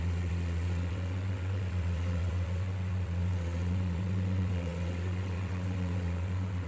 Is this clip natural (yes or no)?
no